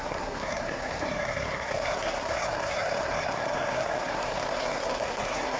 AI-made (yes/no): yes